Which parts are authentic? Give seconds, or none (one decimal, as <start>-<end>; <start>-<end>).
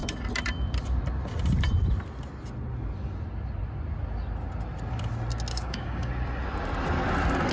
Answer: 0.0-5.5; 6.1-7.5